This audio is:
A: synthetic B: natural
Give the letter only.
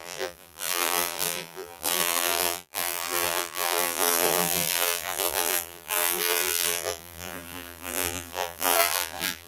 A